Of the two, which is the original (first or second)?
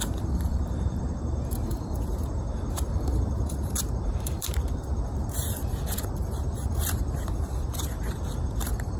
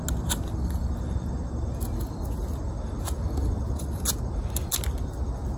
second